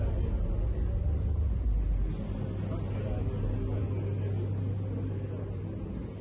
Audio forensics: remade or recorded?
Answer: recorded